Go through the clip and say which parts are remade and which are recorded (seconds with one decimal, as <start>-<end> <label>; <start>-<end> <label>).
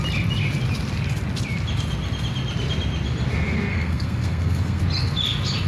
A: 0.0-3.7 recorded; 3.7-4.8 remade; 4.8-5.7 recorded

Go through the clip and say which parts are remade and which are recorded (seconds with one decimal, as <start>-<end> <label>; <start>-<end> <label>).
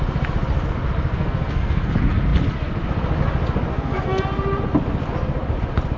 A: 0.0-1.1 recorded; 1.1-1.9 remade; 1.9-3.7 recorded; 3.7-4.2 remade; 4.2-6.0 recorded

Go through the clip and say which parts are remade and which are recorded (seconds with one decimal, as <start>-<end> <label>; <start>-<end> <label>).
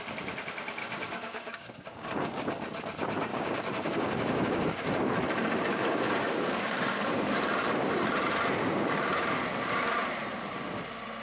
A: 0.0-0.8 recorded; 0.8-2.5 remade; 2.5-3.3 recorded; 3.3-5.0 remade; 5.0-5.7 recorded; 5.7-7.4 remade; 7.4-11.2 recorded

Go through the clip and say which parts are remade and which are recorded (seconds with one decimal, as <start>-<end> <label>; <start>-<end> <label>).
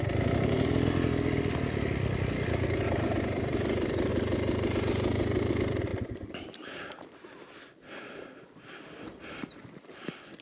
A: 0.0-4.1 remade; 4.1-5.5 recorded; 5.5-5.9 remade; 5.9-7.0 recorded; 7.0-10.4 remade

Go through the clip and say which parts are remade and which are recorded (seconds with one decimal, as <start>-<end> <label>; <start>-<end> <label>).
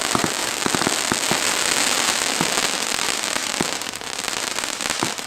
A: 0.0-5.3 recorded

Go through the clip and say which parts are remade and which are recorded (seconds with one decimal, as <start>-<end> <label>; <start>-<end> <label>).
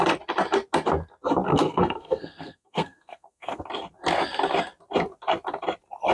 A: 0.0-1.5 recorded; 1.5-3.6 remade; 3.6-6.1 recorded